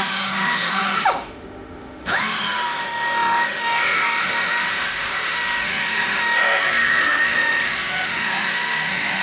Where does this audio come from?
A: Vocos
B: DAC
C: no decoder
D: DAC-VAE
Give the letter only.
D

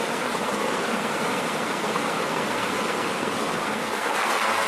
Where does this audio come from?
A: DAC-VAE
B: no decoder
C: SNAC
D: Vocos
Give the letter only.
C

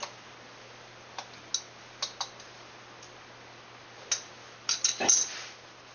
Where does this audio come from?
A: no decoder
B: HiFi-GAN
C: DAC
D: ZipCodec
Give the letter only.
A